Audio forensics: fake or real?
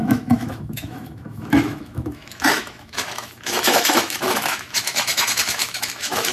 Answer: fake